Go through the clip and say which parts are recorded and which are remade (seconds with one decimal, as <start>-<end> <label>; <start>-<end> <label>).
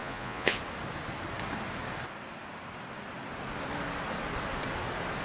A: 0.0-0.6 remade; 0.6-5.2 recorded